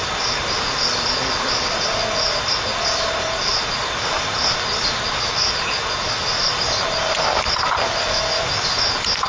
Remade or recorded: recorded